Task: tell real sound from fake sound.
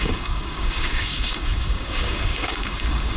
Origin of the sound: fake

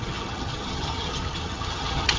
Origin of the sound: fake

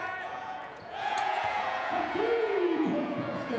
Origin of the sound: fake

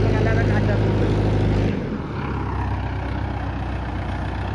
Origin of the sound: real